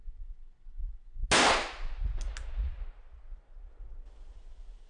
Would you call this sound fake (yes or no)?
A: no